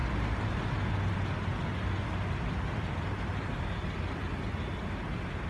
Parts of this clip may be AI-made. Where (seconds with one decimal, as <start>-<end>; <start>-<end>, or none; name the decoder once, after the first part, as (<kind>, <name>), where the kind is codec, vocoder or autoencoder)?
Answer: 0.0-0.9 (vocoder, BigVGAN v2)